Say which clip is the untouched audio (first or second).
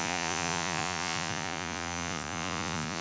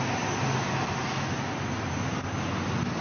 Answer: second